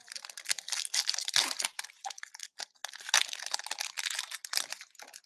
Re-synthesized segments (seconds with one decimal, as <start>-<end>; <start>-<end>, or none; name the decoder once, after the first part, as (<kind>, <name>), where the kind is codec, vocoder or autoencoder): none